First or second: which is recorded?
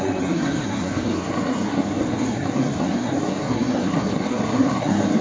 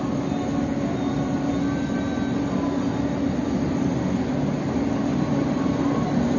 second